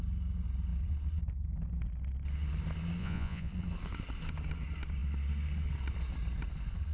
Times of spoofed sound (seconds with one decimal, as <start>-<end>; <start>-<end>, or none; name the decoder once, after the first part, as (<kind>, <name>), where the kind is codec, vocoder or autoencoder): 3.0-3.5 (vocoder, Vocos)